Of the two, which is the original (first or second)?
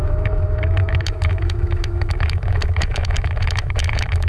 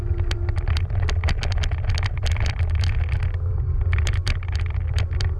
second